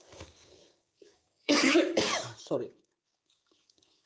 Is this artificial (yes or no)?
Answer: yes